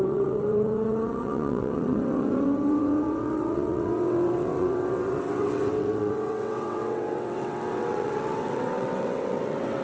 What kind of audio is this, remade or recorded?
remade